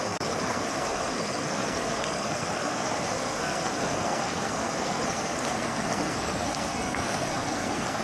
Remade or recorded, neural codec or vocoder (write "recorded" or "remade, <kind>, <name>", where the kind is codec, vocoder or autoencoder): remade, codec, SNAC